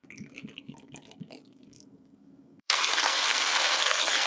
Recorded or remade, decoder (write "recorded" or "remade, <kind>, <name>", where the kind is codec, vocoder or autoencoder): remade, codec, SNAC